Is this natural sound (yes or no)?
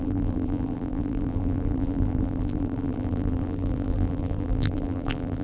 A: no